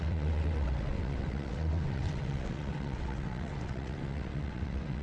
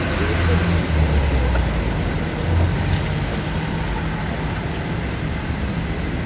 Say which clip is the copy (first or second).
first